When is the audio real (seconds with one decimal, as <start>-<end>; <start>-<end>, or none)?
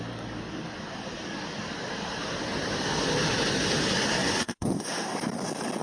0.0-4.2; 4.9-5.8